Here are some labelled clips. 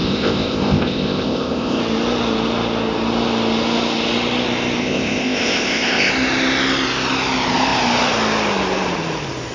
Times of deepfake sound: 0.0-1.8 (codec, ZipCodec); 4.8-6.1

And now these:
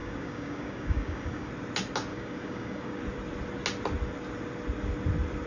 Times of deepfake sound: 0.0-1.5 (codec, DAC); 2.1-3.0

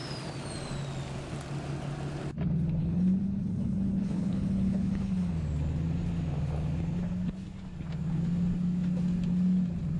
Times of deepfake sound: 2.8-5.3 (codec, HILCodec)

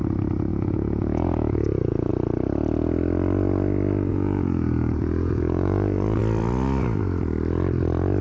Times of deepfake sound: 0.5-2.1 (vocoder, Vocos); 4.1-6.2

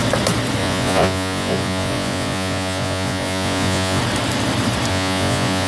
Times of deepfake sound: 0.6-4.0 (vocoder, Vocos); 4.9-5.7

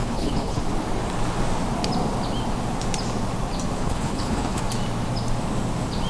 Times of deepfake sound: 0.0-0.6 (codec, HILCodec); 3.8-4.6